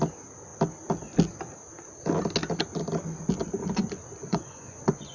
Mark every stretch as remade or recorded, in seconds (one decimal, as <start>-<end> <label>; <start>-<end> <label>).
0.0-4.2 recorded; 4.2-5.1 remade